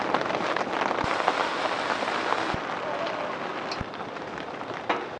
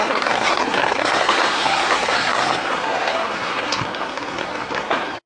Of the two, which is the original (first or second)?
first